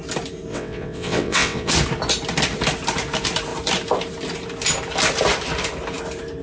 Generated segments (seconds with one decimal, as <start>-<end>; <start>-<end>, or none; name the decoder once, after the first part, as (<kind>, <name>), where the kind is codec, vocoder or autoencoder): 0.5-1.7 (vocoder, WaveNeXt)

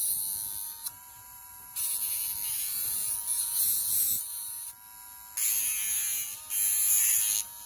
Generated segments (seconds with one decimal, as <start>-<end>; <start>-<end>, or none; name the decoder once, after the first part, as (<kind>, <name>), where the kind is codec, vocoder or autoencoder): 0.8-1.8 (vocoder, BigVGAN v2)

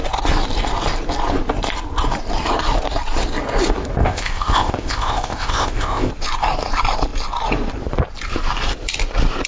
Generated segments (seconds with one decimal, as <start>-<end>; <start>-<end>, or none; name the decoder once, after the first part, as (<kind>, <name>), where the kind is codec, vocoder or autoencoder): 4.0-6.1 (codec, ZipCodec)